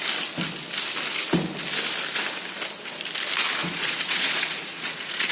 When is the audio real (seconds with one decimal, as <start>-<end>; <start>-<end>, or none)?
0.0-3.6